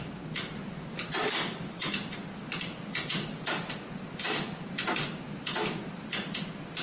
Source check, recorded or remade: recorded